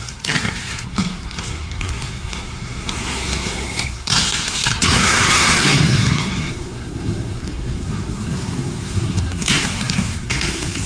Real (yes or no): no